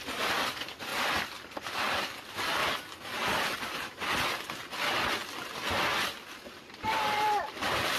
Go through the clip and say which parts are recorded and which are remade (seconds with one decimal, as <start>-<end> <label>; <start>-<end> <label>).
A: 0.0-8.0 remade